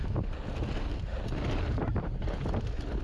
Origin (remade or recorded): recorded